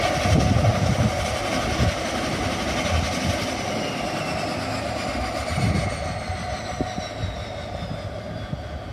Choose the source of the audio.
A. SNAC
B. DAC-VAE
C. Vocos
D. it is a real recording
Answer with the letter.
D